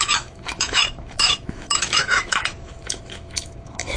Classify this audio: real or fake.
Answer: fake